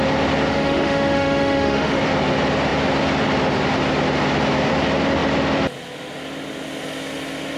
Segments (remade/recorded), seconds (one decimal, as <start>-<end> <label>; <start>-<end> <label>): 0.0-0.5 recorded; 0.5-2.0 remade; 2.0-7.6 recorded